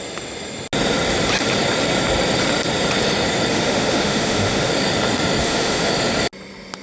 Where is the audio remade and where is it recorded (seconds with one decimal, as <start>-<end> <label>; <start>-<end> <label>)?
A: 0.0-3.5 recorded; 3.5-4.7 remade; 4.7-5.4 recorded; 5.4-5.9 remade; 5.9-6.8 recorded